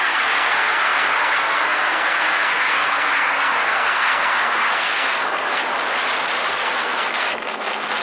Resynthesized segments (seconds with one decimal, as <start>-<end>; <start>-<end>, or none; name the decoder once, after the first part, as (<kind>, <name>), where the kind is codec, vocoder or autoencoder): 0.0-5.7 (codec, SNAC); 6.5-8.0

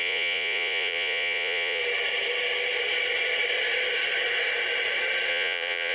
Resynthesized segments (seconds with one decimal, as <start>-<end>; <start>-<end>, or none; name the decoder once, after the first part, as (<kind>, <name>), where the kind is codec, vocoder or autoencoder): 0.0-1.8 (vocoder, Vocos); 5.3-5.9